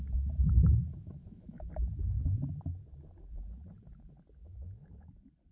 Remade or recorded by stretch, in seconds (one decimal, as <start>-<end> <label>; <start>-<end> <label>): 0.0-0.8 recorded; 0.8-1.7 remade; 1.7-4.4 recorded; 4.4-5.1 remade; 5.1-5.5 recorded